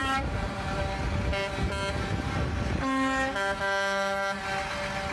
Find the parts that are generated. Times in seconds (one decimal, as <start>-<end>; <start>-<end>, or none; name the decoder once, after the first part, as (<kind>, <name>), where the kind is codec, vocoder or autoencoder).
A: 0.0-0.8 (vocoder, BigVGAN v2)